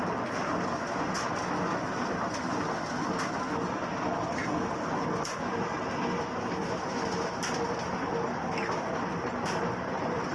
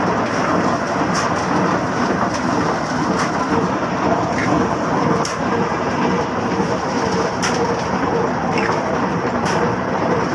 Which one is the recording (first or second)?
first